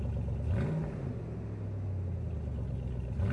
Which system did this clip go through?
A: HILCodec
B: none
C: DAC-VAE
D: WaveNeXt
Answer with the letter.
B